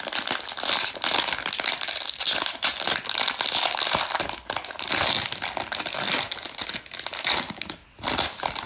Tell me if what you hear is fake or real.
real